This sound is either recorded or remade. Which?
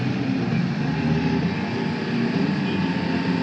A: recorded